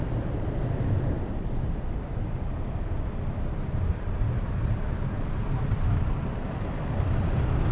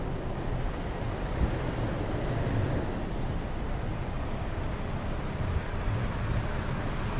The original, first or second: second